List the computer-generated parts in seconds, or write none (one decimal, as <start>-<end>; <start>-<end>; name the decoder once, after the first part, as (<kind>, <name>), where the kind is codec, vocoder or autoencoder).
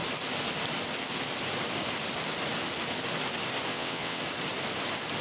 3.7-4.2 (vocoder, WaveNeXt)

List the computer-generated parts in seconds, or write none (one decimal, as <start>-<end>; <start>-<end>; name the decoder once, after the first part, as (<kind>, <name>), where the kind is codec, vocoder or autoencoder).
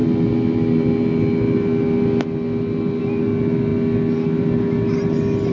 none